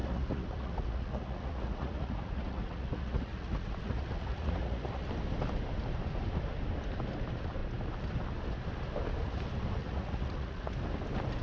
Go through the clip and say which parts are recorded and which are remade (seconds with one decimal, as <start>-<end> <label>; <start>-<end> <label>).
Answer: 0.0-5.1 remade; 5.1-9.8 recorded; 9.8-10.7 remade; 10.7-11.4 recorded